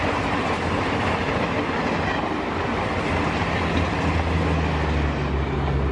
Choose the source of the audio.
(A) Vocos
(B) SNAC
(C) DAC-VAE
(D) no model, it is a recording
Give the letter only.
D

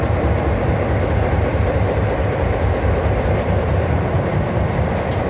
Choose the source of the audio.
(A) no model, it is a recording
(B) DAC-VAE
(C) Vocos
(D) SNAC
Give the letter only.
A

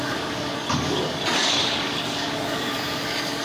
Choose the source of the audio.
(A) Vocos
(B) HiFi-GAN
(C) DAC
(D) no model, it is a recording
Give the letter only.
C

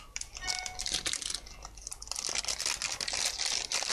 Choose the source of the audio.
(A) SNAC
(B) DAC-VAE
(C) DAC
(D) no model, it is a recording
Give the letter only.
D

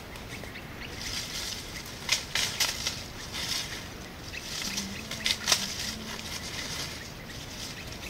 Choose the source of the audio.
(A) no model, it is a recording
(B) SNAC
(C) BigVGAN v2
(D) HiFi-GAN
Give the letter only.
A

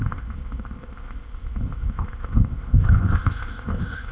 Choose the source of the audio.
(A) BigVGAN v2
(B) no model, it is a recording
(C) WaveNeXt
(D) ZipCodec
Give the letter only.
D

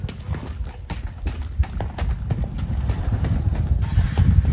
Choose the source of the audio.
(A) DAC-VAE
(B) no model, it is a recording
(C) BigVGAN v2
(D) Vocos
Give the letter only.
B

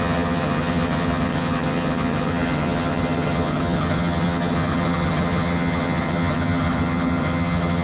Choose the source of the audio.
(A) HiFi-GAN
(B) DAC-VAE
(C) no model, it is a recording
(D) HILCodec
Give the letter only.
A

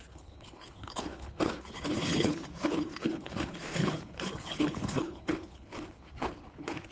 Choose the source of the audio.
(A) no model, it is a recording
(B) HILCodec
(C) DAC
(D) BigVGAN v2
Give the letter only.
B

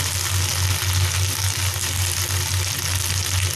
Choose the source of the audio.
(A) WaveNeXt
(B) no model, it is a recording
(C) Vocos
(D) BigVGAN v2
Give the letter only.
B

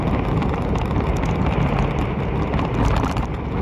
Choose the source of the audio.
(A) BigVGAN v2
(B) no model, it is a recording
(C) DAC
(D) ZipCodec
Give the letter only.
B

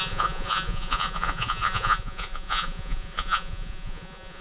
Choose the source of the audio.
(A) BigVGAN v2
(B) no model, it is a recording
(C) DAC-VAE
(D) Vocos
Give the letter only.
D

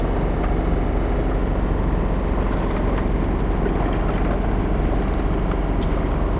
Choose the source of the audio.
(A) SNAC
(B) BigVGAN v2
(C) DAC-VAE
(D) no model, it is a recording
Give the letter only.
D